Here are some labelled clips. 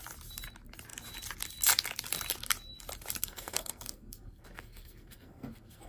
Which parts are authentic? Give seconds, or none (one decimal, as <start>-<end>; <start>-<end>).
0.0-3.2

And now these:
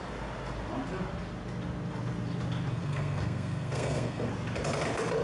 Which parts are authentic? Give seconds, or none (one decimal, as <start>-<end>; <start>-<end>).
0.0-2.7; 4.3-5.2

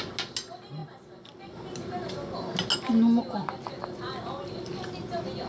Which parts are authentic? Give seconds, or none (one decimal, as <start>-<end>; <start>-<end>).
0.0-5.5

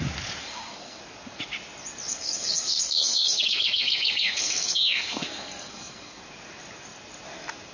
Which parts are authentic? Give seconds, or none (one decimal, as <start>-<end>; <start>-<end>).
0.0-0.4; 1.0-2.1; 6.2-7.7